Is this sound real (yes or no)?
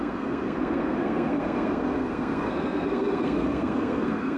no